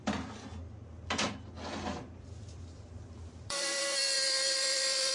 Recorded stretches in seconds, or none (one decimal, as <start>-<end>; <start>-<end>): 0.0-1.9